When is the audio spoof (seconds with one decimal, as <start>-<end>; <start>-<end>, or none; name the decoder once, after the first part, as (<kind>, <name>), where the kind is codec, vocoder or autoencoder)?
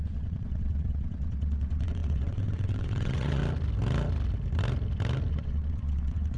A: 0.0-3.4 (vocoder, WaveNeXt); 5.3-6.4